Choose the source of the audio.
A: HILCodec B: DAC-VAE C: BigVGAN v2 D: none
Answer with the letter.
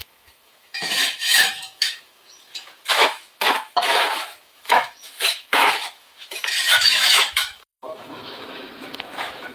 B